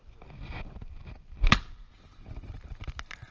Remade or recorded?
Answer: recorded